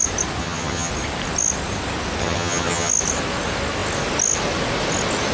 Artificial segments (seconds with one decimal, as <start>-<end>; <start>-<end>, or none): 0.4-0.9; 2.2-2.9

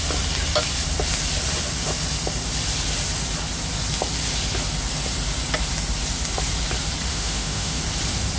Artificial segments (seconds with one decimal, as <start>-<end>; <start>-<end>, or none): 7.1-7.8

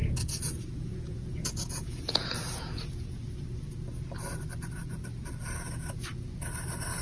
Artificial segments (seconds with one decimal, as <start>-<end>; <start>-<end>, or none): 0.0-3.3

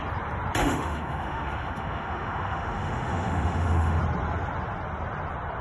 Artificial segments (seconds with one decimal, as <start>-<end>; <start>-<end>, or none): 0.6-4.0

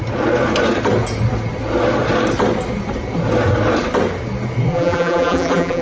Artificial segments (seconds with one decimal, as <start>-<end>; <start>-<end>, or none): 4.7-5.8

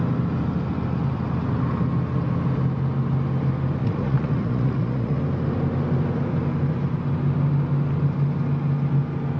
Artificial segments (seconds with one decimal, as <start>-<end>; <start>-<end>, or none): 3.8-5.2

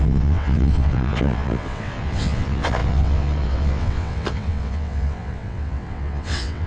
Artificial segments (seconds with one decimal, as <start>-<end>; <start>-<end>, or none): 0.0-6.7

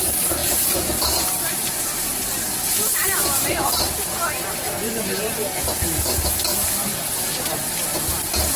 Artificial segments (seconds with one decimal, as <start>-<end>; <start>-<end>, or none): none